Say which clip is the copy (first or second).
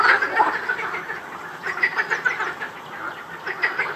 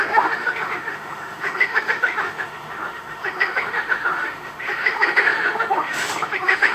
second